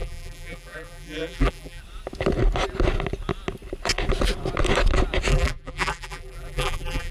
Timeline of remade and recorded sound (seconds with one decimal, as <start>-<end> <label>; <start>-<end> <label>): 0.0-1.8 remade; 1.8-5.3 recorded; 5.3-7.1 remade